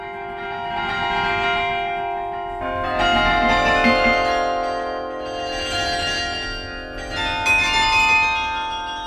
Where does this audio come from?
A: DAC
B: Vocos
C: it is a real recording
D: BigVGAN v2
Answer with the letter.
C